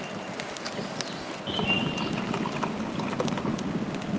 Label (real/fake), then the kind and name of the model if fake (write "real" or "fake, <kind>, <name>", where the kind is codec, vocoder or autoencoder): real